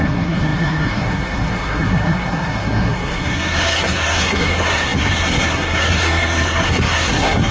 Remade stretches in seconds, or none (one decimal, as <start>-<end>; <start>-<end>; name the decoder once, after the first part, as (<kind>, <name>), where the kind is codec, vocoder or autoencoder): 0.0-7.5 (codec, SNAC)